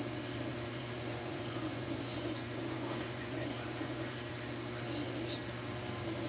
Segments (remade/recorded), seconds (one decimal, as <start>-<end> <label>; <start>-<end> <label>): 0.0-0.5 recorded; 0.5-4.3 remade; 4.3-6.3 recorded